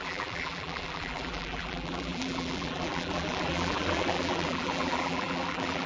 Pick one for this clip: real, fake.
fake